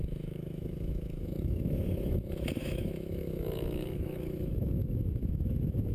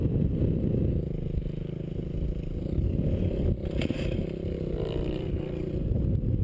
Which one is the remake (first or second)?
first